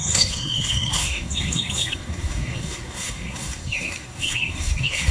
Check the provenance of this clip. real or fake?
fake